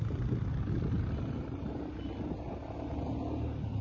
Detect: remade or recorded recorded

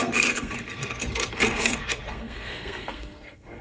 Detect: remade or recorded remade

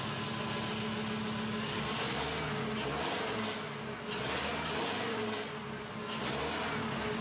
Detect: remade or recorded recorded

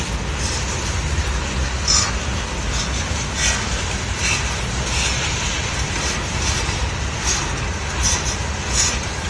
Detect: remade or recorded recorded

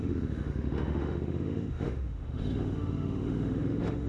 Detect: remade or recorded remade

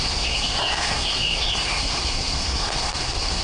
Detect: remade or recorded remade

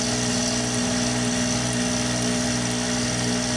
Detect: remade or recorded recorded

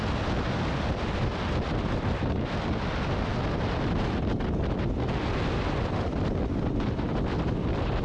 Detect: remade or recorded recorded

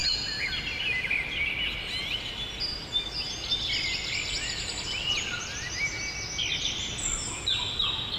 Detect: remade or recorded recorded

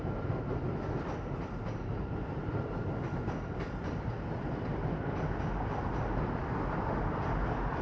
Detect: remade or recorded recorded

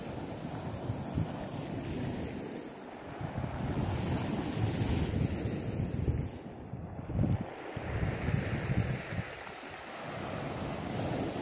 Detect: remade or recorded recorded